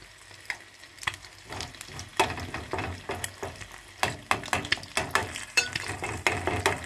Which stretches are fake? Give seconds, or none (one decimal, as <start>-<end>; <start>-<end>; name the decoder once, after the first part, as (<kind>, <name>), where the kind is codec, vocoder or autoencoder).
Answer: 5.2-5.9 (vocoder, BigVGAN v2)